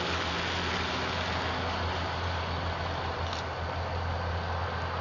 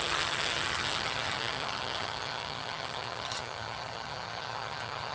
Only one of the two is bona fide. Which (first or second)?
first